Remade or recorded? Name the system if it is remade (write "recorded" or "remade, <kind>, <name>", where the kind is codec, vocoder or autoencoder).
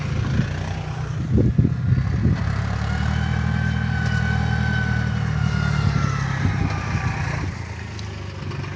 recorded